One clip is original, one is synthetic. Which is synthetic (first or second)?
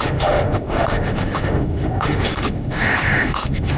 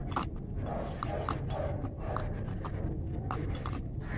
first